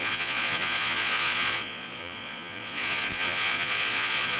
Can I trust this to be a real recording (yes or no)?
no